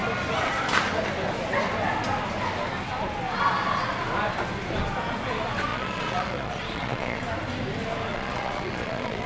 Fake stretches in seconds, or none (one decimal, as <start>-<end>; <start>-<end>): 5.7-7.2; 8.1-9.3